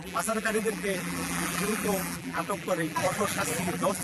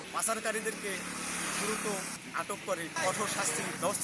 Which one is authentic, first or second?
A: second